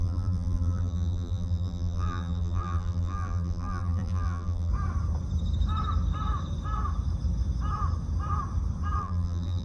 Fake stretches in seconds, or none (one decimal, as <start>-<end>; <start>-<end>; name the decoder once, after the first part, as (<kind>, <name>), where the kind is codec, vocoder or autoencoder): 0.0-4.7 (vocoder, BigVGAN v2); 9.0-9.6